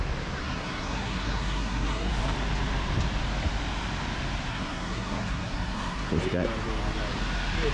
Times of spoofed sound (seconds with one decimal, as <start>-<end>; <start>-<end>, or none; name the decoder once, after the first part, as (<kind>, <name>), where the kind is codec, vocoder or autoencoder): 0.4-2.1 (codec, SNAC); 4.5-6.1